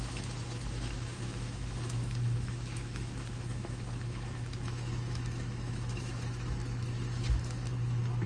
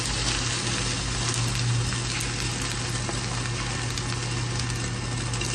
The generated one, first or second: first